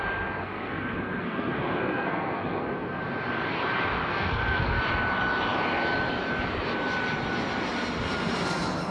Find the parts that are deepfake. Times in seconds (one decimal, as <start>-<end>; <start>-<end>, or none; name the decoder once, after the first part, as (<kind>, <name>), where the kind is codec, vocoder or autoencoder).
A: 0.4-3.0 (codec, SNAC); 4.0-4.8

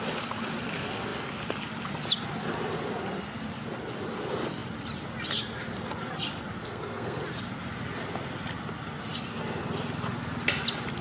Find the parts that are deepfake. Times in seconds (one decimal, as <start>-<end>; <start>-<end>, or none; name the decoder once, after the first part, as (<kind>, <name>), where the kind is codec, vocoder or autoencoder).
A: 6.6-7.2 (codec, SNAC)

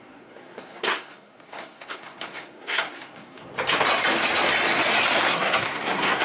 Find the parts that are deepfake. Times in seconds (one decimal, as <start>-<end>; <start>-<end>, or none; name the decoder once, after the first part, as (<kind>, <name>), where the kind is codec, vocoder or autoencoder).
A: 0.0-3.5 (codec, SNAC); 5.2-6.2